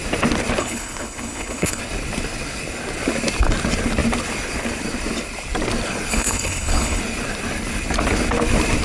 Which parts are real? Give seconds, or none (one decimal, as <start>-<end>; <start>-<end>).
0.0-0.6; 1.8-6.1; 7.0-8.8